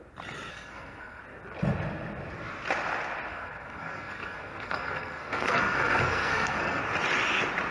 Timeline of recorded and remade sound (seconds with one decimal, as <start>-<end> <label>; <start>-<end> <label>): 0.0-0.5 recorded; 0.5-1.2 remade; 1.2-3.3 recorded; 3.3-6.8 remade; 6.8-7.7 recorded